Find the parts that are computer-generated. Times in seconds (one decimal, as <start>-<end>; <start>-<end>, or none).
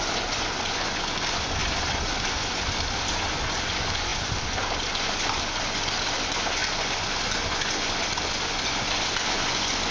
0.0-9.9